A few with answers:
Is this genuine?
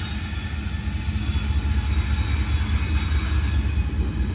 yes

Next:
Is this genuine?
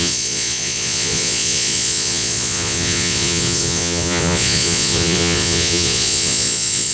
no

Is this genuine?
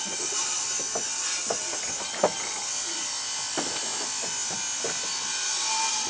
yes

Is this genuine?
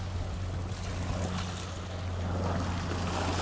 yes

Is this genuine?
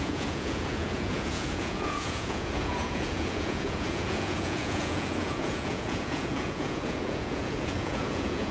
no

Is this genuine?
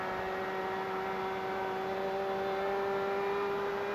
yes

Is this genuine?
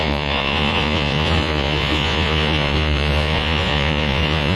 no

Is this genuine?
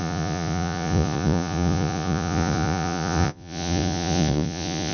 no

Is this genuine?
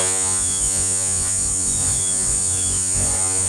no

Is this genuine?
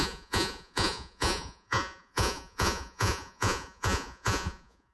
no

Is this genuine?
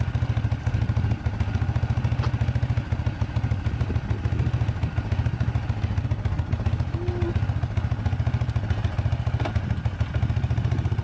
yes